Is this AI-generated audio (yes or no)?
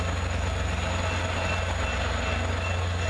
no